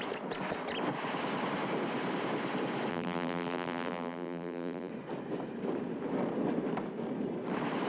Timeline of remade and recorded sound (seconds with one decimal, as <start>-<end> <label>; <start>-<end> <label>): 0.0-2.9 recorded; 2.9-4.9 remade; 4.9-7.9 recorded